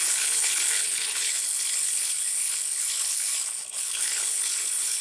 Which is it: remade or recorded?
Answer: remade